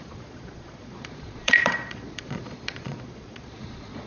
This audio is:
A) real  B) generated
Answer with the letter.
B